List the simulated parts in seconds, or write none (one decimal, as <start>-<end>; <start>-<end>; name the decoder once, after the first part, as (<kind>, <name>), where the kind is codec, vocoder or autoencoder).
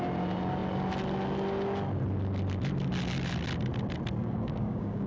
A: 4.2-5.1 (codec, DAC)